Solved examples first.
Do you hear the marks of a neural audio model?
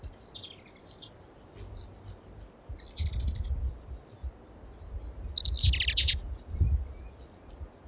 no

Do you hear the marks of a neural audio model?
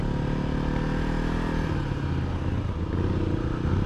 no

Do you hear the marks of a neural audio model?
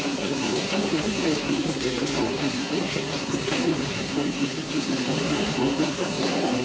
yes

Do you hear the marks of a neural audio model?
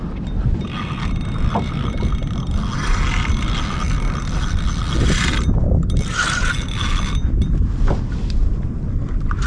no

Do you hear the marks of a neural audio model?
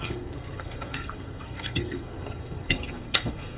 yes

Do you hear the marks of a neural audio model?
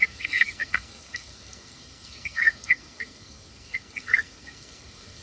yes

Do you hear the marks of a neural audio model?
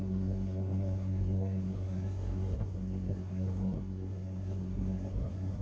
yes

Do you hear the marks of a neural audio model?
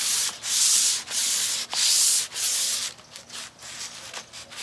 no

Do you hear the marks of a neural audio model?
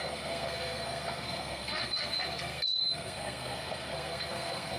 yes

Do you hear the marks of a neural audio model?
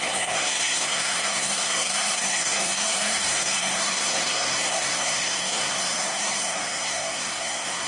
yes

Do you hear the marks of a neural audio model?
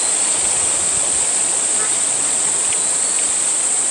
no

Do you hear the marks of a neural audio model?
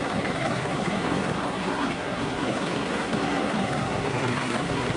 yes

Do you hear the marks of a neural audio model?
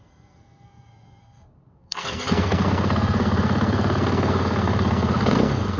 yes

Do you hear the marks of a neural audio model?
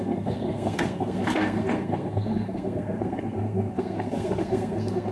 yes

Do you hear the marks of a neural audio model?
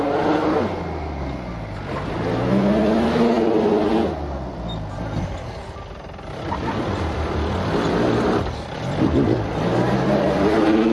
no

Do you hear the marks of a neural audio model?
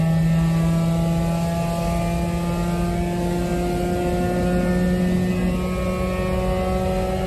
no